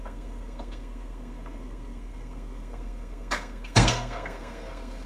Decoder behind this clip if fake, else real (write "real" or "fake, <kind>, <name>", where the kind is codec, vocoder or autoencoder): fake, codec, SNAC